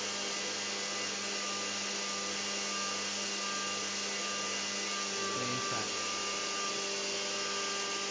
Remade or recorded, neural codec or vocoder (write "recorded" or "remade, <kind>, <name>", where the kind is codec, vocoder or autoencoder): recorded